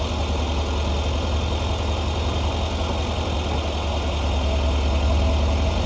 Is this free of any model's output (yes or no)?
yes